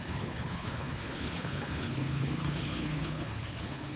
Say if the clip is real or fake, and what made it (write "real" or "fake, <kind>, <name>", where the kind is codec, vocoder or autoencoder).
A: fake, codec, HILCodec